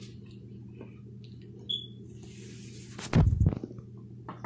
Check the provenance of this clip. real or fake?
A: real